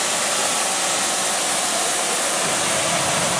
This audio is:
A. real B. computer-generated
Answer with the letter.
A